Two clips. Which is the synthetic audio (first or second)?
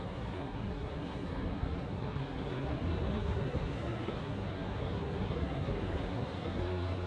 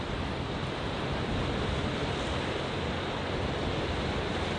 first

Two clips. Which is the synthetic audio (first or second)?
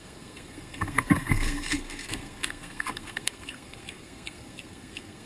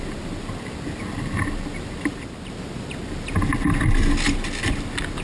first